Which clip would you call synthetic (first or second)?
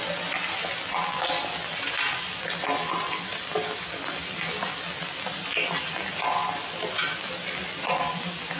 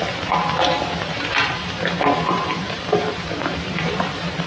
second